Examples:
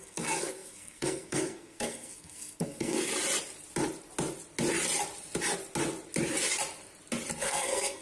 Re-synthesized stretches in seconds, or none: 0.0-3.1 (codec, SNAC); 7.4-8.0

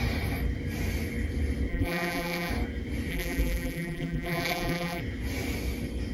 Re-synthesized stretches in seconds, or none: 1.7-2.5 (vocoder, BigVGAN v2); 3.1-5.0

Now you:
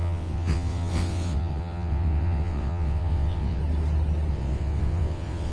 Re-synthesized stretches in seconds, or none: 0.0-3.6 (vocoder, WaveNeXt); 4.3-5.5